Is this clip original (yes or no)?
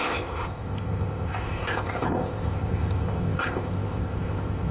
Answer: no